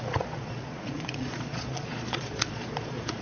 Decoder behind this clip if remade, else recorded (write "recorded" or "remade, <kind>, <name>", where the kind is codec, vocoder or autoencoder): remade, vocoder, Vocos